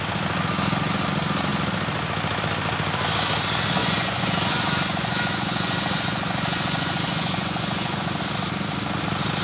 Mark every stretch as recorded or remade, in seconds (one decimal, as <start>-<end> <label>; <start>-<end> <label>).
0.0-3.8 recorded; 3.8-8.2 remade; 8.2-9.4 recorded